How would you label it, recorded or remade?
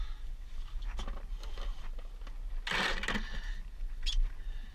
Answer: recorded